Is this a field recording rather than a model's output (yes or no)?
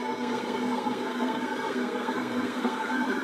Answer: no